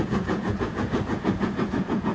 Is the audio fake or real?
fake